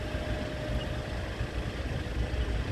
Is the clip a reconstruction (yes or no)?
no